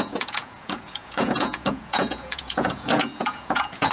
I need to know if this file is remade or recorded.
remade